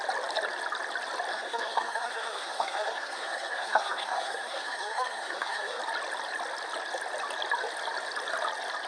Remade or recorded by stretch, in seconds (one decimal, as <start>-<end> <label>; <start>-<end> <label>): 0.0-1.3 recorded; 1.3-5.8 remade; 5.8-8.9 recorded